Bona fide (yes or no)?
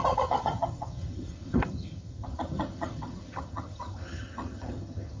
no